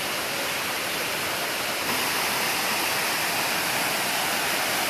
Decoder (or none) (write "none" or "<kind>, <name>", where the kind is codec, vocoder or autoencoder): vocoder, BigVGAN v2